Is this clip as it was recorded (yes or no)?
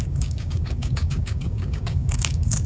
no